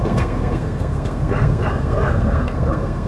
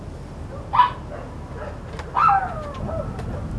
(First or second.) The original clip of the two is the second